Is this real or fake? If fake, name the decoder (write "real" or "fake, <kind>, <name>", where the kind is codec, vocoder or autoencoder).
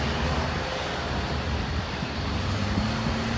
real